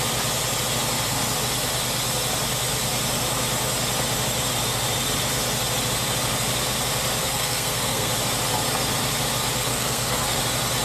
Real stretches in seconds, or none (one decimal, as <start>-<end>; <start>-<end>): 0.0-7.2; 8.1-9.7; 10.4-10.8